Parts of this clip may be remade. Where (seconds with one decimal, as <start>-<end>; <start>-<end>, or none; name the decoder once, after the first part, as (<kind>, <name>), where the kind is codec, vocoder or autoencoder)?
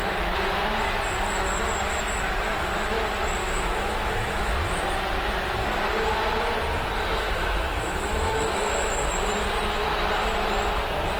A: 3.4-4.4 (autoencoder, DAC-VAE); 7.1-8.9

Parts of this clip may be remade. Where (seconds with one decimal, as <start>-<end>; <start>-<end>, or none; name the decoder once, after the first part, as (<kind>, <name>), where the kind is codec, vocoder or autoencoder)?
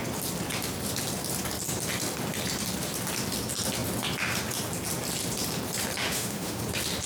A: 6.0-6.6 (autoencoder, DAC-VAE)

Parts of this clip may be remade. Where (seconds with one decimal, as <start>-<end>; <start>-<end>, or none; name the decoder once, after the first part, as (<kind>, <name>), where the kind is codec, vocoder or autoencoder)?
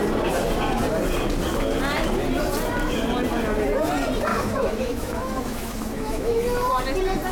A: 4.3-6.4 (autoencoder, DAC-VAE)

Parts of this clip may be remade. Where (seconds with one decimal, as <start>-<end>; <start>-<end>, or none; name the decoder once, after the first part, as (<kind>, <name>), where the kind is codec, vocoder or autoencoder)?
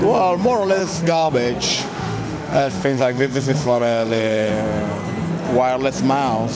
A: 0.8-1.3 (autoencoder, DAC-VAE); 1.8-4.5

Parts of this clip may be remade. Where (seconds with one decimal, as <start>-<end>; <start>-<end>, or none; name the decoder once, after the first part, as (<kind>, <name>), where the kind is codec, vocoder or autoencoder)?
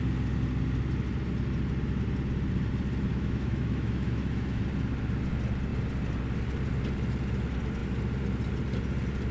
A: 3.1-4.6 (autoencoder, DAC-VAE)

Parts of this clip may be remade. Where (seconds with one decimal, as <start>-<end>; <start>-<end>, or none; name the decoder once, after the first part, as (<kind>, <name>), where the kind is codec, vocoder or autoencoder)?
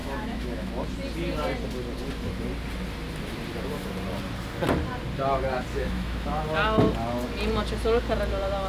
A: 0.0-0.7 (autoencoder, DAC-VAE); 5.7-6.4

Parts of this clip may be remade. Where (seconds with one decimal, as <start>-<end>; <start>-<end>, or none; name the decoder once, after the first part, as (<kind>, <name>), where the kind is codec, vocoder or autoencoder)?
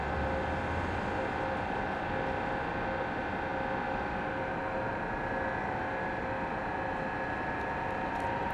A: none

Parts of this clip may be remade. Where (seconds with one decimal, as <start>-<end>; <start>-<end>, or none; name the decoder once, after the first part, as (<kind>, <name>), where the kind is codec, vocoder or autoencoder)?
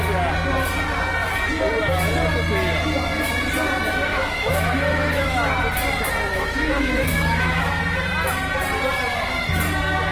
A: 4.1-5.5 (autoencoder, DAC-VAE); 6.3-7.7